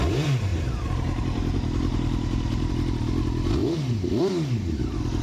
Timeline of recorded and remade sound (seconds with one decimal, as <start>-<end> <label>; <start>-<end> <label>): 0.0-0.5 recorded; 0.5-2.7 remade; 2.7-3.6 recorded; 3.6-4.2 remade; 4.2-5.2 recorded